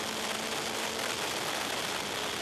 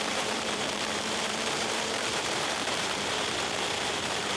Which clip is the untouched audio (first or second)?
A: first